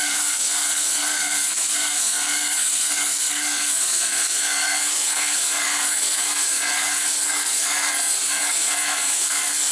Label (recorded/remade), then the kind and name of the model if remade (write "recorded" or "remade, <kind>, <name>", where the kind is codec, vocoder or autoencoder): remade, codec, SNAC